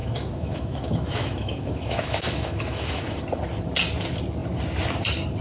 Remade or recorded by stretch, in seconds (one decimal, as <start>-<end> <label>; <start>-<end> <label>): 0.0-3.2 remade; 3.2-5.4 recorded